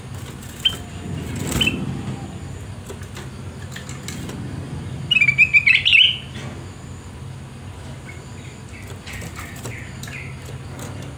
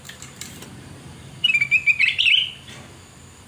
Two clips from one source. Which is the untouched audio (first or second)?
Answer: first